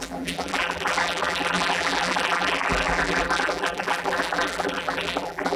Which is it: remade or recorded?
remade